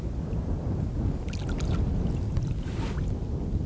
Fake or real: real